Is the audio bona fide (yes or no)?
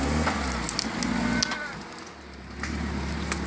yes